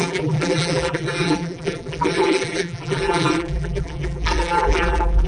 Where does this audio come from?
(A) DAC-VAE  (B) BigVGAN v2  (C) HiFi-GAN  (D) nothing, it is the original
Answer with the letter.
B